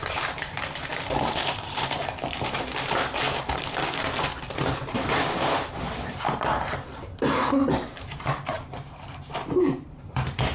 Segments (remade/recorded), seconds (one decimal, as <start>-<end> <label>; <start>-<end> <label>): 0.0-2.0 remade; 2.0-4.9 recorded; 4.9-10.5 remade

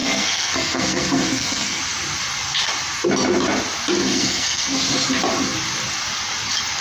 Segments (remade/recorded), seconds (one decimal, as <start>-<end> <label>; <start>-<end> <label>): 0.0-1.8 remade; 1.8-4.0 recorded; 4.0-4.9 remade; 4.9-6.8 recorded

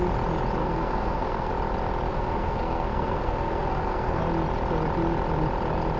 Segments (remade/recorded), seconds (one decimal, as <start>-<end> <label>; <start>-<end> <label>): 0.0-0.6 recorded; 0.6-1.5 remade; 1.5-2.1 recorded; 2.1-4.2 remade; 4.2-6.0 recorded

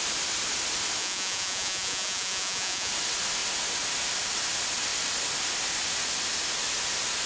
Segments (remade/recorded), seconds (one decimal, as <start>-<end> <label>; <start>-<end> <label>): 0.0-1.0 recorded; 1.0-2.9 remade; 2.9-7.3 recorded

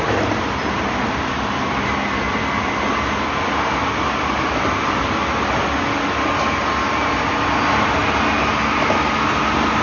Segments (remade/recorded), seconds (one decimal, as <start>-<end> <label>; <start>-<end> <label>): 0.0-9.8 recorded

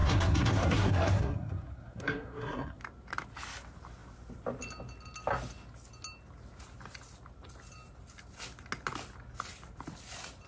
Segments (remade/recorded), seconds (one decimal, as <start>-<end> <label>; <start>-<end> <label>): 0.0-2.8 remade; 2.8-10.5 recorded

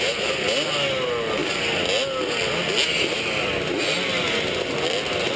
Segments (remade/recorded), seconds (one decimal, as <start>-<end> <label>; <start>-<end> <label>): 0.0-5.4 recorded

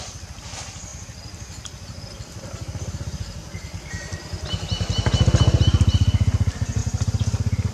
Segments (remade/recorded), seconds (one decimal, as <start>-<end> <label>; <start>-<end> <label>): 0.0-7.7 recorded